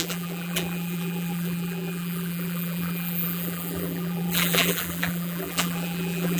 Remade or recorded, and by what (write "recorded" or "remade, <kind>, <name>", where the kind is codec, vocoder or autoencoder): remade, vocoder, BigVGAN v2